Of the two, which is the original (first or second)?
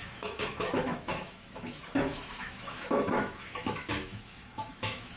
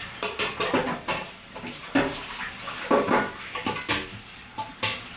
second